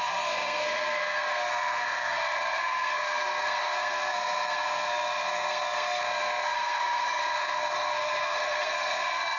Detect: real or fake fake